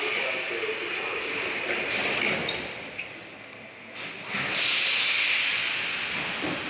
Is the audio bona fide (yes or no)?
yes